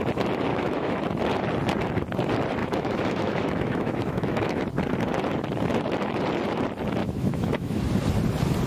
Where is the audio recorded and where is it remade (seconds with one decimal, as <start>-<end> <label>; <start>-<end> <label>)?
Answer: 0.0-0.5 recorded; 0.5-1.0 remade; 1.0-2.6 recorded; 2.6-4.6 remade; 4.6-7.0 recorded; 7.0-7.8 remade; 7.8-8.7 recorded